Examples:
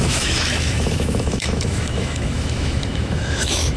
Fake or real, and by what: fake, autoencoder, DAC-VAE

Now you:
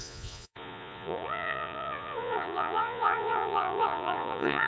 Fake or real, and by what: fake, vocoder, Vocos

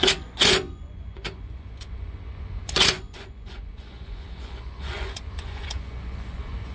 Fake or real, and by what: fake, vocoder, Vocos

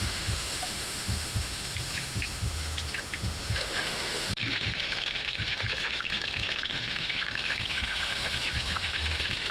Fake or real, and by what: fake, autoencoder, DAC-VAE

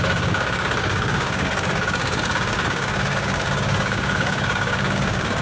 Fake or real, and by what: fake, codec, DAC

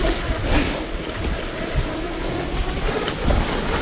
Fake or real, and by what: real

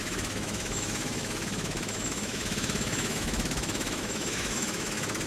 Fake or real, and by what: fake, autoencoder, DAC-VAE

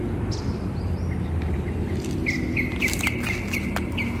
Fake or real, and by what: real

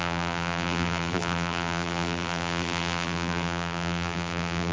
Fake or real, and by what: fake, vocoder, BigVGAN v2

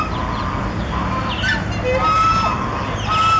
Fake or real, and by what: real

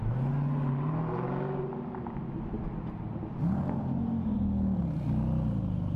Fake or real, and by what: real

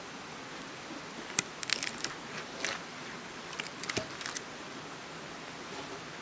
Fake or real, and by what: real